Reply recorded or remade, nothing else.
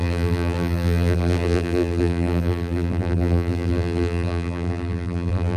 remade